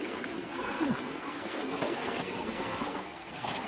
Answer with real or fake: fake